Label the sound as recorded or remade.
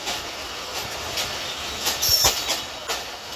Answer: recorded